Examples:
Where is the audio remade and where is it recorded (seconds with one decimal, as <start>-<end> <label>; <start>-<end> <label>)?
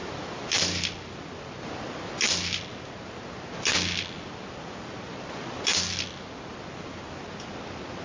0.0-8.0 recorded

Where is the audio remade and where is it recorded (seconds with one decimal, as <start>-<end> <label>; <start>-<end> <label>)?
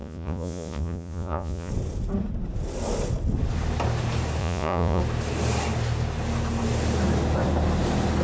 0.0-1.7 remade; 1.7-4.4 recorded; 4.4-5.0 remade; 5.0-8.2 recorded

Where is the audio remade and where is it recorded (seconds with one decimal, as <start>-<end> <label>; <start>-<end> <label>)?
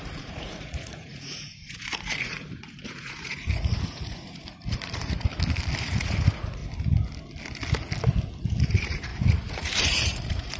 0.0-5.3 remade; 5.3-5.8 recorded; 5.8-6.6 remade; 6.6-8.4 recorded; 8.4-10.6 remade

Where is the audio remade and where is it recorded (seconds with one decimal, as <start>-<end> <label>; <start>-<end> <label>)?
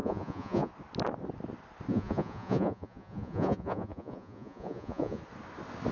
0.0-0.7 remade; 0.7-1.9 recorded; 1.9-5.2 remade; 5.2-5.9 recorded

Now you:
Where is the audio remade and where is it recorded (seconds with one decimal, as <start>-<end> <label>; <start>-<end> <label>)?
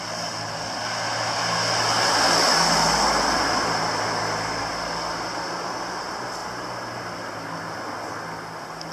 0.0-8.9 recorded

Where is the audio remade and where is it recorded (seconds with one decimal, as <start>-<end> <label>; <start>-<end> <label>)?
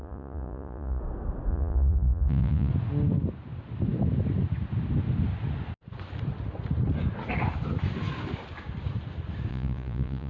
0.0-1.0 remade; 1.0-1.5 recorded; 1.5-2.7 remade; 2.7-9.5 recorded; 9.5-10.3 remade